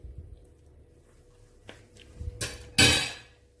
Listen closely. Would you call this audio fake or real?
real